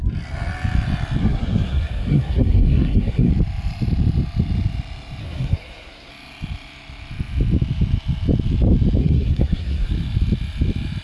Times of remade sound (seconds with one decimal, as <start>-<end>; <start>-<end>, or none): 1.2-3.3; 5.2-6.1; 9.0-9.9

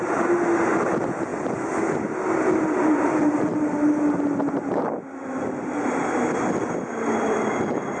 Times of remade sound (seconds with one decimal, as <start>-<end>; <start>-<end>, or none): none

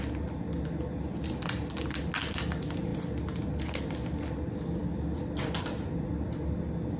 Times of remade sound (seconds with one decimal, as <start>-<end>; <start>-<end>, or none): none

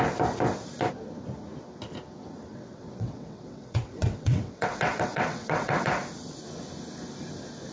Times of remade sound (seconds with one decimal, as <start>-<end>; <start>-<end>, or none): 2.5-5.9

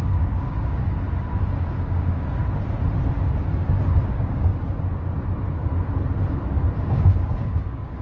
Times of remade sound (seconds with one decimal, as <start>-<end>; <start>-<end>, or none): 0.0-0.8; 1.8-2.4; 4.0-4.5; 6.8-8.0

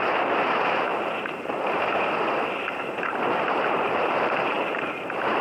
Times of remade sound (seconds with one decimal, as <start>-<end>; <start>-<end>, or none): 0.0-5.4